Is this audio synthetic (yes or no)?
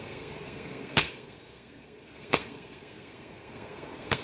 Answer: yes